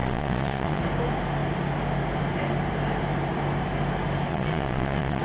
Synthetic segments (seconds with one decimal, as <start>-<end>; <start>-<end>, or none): 0.0-0.8; 4.3-5.2